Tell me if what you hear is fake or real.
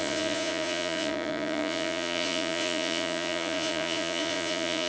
fake